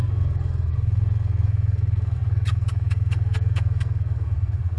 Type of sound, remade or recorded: remade